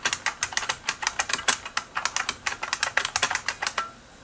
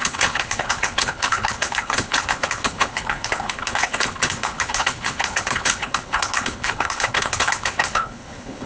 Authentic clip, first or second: first